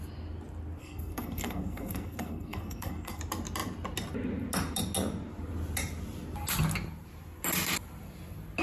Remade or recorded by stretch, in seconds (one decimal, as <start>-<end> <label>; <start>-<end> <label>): 0.0-0.8 recorded; 0.8-3.2 remade; 3.2-8.6 recorded